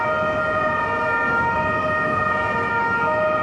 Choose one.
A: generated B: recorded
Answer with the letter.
B